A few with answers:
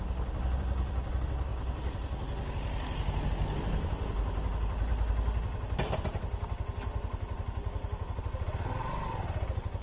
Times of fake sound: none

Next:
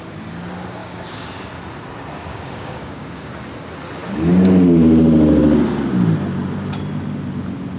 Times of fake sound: 0.8-1.5 (codec, DAC); 2.3-3.3

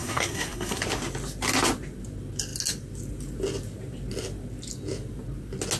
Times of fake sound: 0.0-0.8 (codec, SNAC)

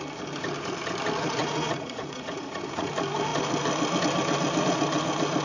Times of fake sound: 1.4-2.9 (vocoder, Vocos)

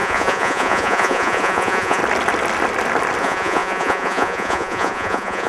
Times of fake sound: 0.0-2.0 (vocoder, Vocos); 3.2-5.5